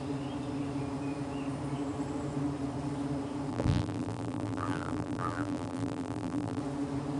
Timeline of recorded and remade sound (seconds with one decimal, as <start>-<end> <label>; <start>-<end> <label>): 0.0-3.5 recorded; 3.5-6.6 remade; 6.6-7.2 recorded

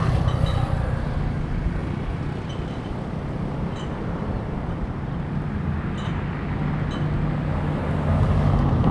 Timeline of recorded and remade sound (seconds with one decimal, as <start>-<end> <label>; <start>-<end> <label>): 0.0-8.9 recorded

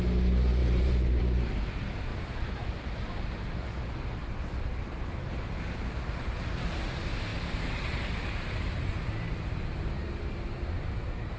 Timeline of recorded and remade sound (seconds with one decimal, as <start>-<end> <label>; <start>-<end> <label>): 0.0-0.6 recorded; 0.6-1.2 remade; 1.2-7.3 recorded; 7.3-9.1 remade; 9.1-11.4 recorded

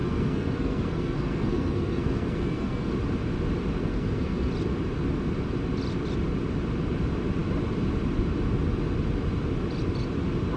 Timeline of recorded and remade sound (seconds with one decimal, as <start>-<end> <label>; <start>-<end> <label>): 0.0-2.9 remade; 2.9-3.8 recorded; 3.8-4.5 remade; 4.5-10.6 recorded

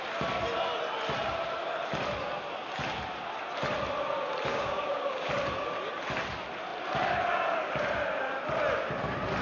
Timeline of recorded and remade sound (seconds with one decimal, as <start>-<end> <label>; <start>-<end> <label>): 0.0-4.5 recorded; 4.5-5.3 remade; 5.3-9.4 recorded

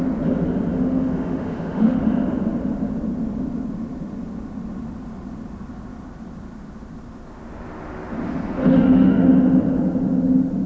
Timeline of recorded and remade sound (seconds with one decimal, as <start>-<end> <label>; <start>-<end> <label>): 0.0-0.7 recorded; 0.7-2.0 remade; 2.0-8.6 recorded; 8.6-9.3 remade; 9.3-10.7 recorded

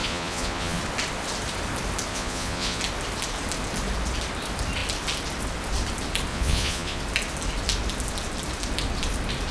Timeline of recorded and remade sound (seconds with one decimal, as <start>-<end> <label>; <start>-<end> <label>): 0.0-0.8 remade; 0.8-2.1 recorded; 2.1-2.8 remade; 2.8-6.3 recorded; 6.3-7.0 remade; 7.0-9.5 recorded